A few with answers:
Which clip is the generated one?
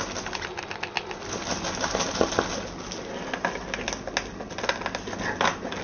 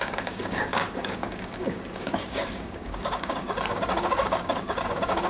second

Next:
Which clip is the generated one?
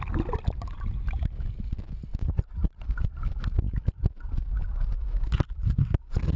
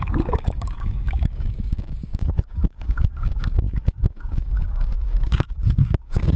second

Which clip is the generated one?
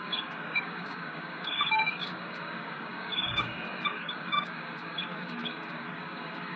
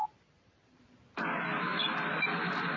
first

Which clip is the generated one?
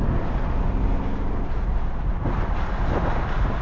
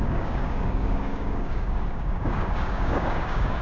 second